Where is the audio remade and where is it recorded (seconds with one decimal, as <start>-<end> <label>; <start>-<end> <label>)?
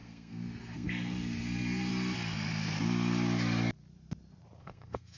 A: 0.0-1.9 remade; 1.9-4.6 recorded; 4.6-5.2 remade